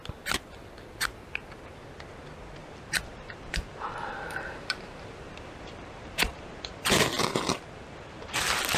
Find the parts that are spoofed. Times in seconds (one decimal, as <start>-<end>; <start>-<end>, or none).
2.6-6.8; 7.5-8.4